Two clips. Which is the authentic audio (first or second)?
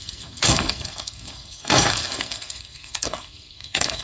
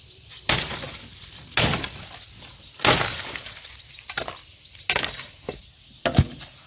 second